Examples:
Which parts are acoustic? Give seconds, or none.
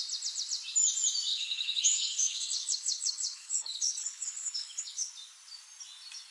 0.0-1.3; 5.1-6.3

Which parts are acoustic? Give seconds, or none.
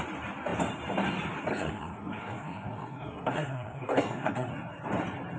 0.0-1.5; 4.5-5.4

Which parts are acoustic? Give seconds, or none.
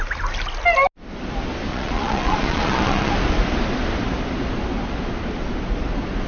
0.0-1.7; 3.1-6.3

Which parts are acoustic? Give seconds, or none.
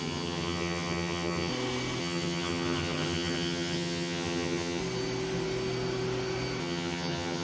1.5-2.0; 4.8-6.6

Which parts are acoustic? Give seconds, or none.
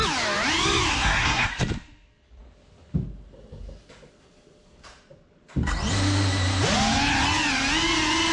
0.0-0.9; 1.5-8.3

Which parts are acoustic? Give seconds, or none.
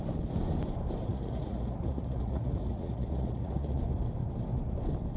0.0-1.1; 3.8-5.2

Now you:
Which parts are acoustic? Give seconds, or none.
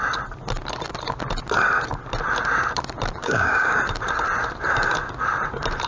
0.0-3.2; 3.8-5.9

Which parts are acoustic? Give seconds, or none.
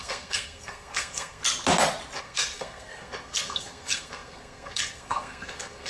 1.4-2.2